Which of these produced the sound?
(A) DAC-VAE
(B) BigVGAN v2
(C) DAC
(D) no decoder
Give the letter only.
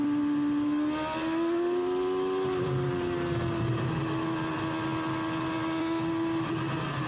D